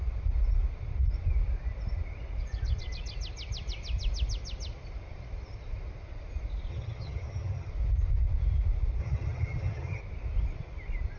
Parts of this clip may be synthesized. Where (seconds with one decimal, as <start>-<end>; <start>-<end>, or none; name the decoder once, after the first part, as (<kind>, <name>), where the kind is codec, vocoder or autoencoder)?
6.7-7.7 (vocoder, HiFi-GAN); 9.0-10.0